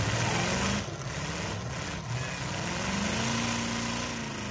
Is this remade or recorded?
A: recorded